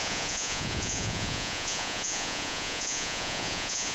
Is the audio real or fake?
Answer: fake